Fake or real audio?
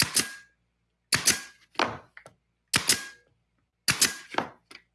real